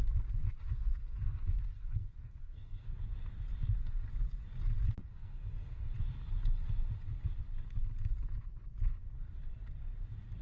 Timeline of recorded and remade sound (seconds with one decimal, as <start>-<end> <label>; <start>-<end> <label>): 0.0-0.4 recorded; 0.4-3.0 remade; 3.0-5.0 recorded; 5.0-5.9 remade; 5.9-10.4 recorded